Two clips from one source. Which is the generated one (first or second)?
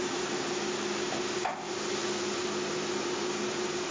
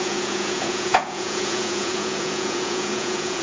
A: second